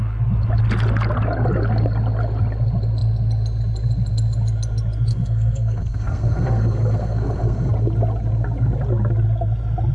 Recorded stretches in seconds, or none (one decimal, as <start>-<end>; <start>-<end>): 0.0-5.1; 7.7-9.9